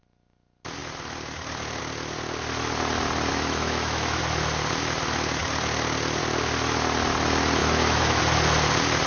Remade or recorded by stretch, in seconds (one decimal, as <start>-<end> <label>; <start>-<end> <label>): 0.0-3.3 recorded; 3.3-4.2 remade; 4.2-7.6 recorded; 7.6-8.2 remade; 8.2-9.1 recorded